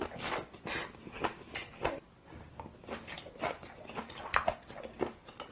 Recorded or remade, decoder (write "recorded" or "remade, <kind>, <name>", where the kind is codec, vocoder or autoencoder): recorded